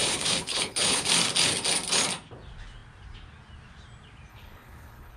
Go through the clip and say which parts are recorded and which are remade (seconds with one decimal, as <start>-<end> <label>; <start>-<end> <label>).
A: 0.0-1.1 remade; 1.1-4.3 recorded; 4.3-5.2 remade